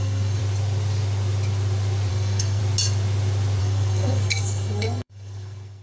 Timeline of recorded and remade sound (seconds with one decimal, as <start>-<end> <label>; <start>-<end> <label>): 0.0-0.4 remade; 0.4-2.1 recorded; 2.1-2.6 remade; 2.6-3.6 recorded; 3.6-5.8 remade